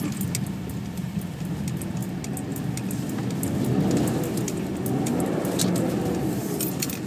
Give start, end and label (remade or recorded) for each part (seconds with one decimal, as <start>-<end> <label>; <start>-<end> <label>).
0.0-7.1 recorded